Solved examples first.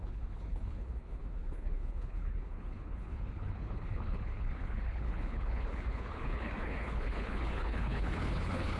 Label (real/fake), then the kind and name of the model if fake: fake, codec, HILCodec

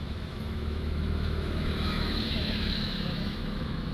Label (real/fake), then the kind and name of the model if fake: fake, autoencoder, DAC-VAE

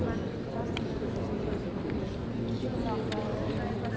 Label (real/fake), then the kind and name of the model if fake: real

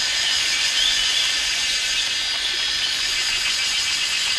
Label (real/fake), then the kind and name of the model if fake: fake, vocoder, Vocos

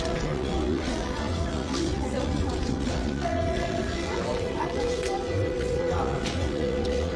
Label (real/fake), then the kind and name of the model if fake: fake, vocoder, WaveNeXt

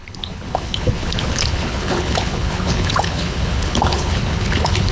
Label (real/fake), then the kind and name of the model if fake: fake, codec, HILCodec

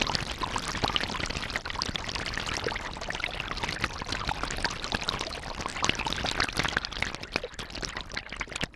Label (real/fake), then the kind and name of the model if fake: real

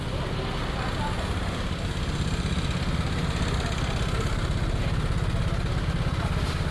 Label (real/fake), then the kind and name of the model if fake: real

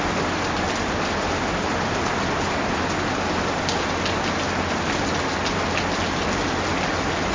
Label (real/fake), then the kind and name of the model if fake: real